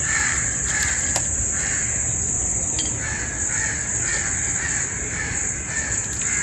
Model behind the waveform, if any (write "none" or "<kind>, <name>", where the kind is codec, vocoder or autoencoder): none